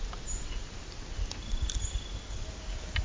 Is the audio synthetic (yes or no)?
no